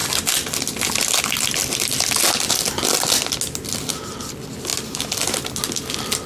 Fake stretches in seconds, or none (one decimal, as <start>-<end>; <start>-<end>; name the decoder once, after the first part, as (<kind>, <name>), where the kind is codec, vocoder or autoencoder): none